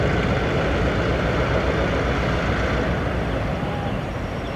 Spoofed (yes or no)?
no